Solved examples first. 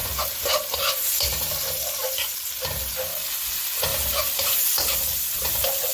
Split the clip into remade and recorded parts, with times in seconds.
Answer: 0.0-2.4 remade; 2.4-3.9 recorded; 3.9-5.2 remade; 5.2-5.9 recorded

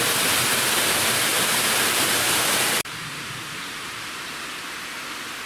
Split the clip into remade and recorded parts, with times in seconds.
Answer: 0.0-1.3 recorded; 1.3-4.6 remade; 4.6-5.5 recorded

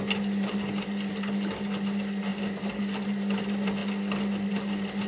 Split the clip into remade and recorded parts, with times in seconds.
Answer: 0.0-5.1 recorded

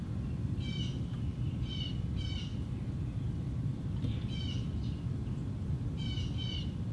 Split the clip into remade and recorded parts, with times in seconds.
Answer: 0.0-0.6 remade; 0.6-2.5 recorded; 2.5-5.1 remade; 5.1-6.9 recorded

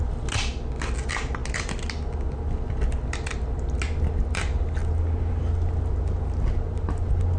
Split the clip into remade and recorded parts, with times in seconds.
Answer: 0.0-7.4 recorded

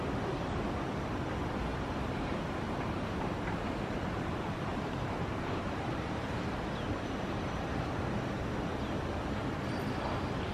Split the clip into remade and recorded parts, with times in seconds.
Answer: 0.0-1.7 recorded; 1.7-3.6 remade; 3.6-4.7 recorded; 4.7-7.8 remade; 7.8-10.5 recorded